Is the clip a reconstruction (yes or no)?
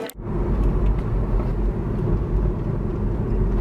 no